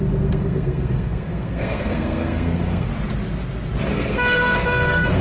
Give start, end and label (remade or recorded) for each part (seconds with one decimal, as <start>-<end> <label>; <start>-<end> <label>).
0.0-2.9 remade; 2.9-3.9 recorded; 3.9-5.2 remade